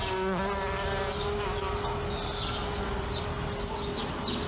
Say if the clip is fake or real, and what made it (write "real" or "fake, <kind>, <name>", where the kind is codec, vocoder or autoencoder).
real